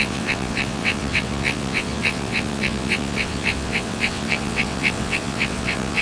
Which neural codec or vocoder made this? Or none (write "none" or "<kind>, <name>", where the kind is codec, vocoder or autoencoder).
vocoder, WaveNeXt